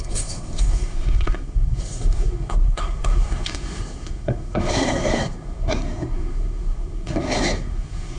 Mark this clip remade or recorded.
remade